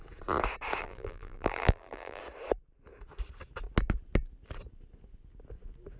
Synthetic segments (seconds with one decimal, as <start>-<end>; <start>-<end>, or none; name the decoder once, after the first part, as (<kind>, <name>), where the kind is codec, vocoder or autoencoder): 0.8-2.2 (vocoder, BigVGAN v2)